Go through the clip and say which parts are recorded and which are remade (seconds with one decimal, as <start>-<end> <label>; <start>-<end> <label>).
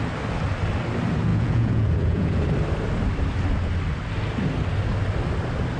0.0-1.3 recorded; 1.3-2.4 remade; 2.4-5.8 recorded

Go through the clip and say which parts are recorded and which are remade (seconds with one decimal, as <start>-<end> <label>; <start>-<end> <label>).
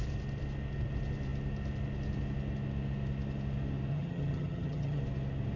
0.0-3.9 recorded; 3.9-5.0 remade; 5.0-5.6 recorded